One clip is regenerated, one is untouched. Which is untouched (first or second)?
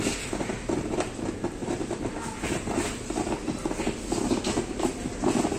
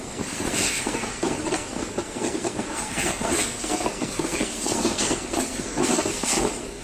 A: first